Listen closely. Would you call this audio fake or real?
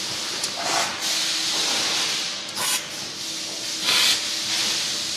real